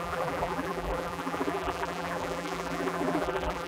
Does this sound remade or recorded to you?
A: remade